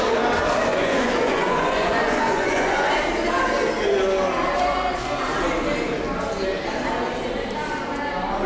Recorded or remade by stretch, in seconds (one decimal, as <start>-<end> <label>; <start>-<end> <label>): 0.0-0.7 recorded; 0.7-2.9 remade; 2.9-8.5 recorded